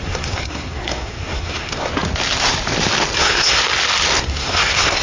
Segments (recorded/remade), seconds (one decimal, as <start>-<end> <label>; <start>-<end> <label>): 0.0-1.9 remade; 1.9-3.2 recorded; 3.2-3.6 remade; 3.6-4.2 recorded; 4.2-5.0 remade